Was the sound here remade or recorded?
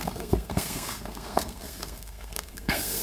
remade